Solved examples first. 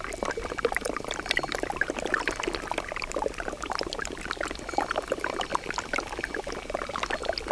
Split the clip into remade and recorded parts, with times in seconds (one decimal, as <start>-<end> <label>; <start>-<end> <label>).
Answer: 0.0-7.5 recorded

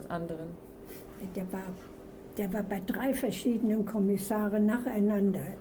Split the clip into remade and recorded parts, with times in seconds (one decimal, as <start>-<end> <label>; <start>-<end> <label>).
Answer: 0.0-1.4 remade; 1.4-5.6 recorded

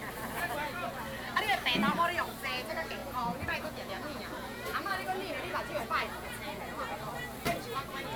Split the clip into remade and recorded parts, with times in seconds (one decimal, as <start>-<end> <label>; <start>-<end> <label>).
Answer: 0.0-3.0 recorded; 3.0-4.2 remade; 4.2-4.7 recorded; 4.7-6.8 remade; 6.8-8.2 recorded